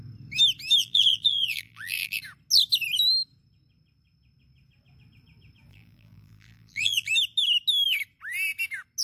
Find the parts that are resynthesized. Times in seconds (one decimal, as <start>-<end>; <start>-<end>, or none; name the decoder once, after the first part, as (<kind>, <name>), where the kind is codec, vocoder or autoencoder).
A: 0.8-2.2 (vocoder, BigVGAN v2); 5.7-7.1